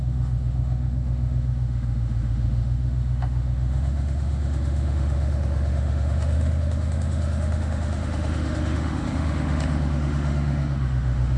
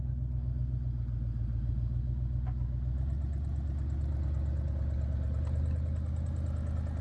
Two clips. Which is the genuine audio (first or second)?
second